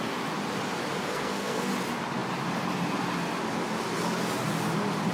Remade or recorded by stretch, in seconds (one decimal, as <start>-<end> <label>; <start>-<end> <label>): 0.0-1.0 recorded; 1.0-1.7 remade; 1.7-5.1 recorded